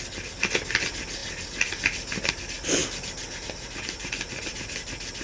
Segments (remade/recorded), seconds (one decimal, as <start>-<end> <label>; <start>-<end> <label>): 0.0-5.2 recorded